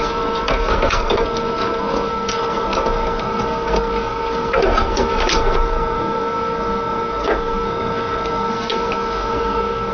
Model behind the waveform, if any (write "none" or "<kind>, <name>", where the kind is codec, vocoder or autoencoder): codec, SNAC